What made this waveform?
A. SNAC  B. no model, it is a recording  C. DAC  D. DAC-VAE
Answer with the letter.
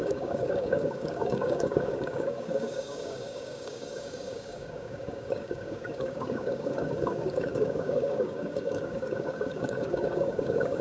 C